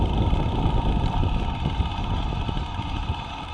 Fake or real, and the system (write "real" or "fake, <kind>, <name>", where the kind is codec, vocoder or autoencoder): fake, vocoder, BigVGAN v2